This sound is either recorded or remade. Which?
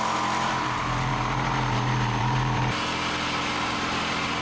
remade